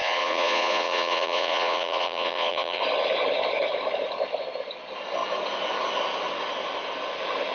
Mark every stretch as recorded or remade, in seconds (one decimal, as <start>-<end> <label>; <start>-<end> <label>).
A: 0.0-2.8 remade; 2.8-7.5 recorded